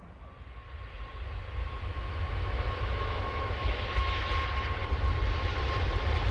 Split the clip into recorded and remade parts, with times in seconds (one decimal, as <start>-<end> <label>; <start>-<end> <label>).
0.0-1.6 recorded; 1.6-4.2 remade; 4.2-6.3 recorded